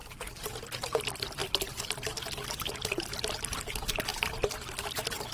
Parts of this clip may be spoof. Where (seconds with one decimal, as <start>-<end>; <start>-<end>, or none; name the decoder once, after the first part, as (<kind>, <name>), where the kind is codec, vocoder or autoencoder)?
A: none